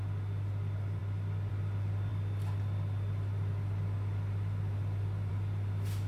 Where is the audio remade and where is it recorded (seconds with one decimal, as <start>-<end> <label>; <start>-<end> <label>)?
0.0-6.1 recorded